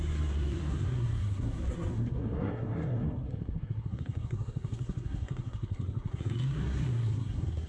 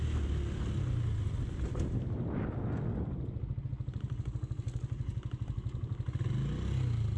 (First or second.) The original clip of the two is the second